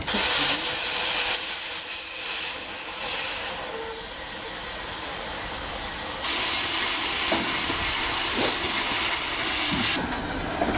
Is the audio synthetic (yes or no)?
no